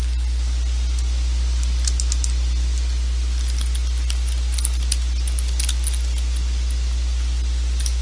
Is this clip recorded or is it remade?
recorded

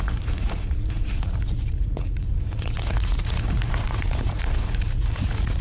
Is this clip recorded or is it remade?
remade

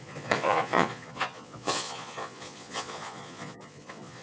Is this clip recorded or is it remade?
remade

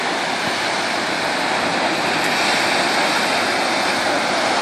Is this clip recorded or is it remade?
recorded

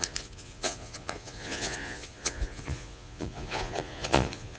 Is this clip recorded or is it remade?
remade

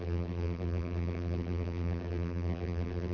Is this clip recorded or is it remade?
remade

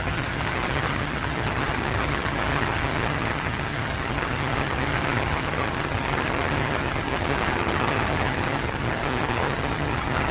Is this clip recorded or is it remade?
remade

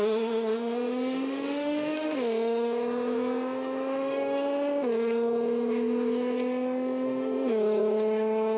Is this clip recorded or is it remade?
remade